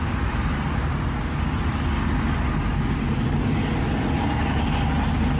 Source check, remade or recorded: recorded